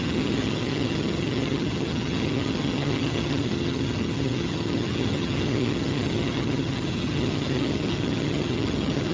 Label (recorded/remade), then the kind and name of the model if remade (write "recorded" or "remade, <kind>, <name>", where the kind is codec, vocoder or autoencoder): remade, vocoder, HiFi-GAN